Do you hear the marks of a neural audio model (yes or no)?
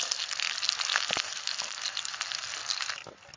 no